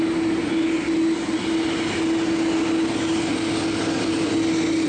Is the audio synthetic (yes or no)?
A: no